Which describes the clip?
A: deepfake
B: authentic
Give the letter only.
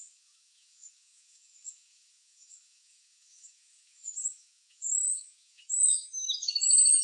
A